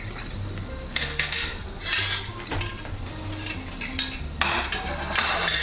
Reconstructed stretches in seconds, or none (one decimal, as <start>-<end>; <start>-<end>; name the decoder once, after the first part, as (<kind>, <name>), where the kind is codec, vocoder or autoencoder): 0.9-1.8 (codec, SNAC)